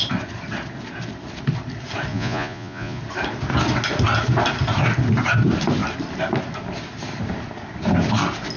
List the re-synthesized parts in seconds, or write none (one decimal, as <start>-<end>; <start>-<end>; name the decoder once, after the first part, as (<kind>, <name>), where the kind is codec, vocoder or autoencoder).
2.1-3.0 (vocoder, Vocos)